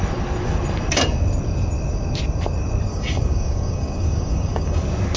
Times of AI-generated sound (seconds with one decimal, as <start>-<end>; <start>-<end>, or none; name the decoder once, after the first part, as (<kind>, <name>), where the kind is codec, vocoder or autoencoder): 2.9-4.8 (codec, DAC)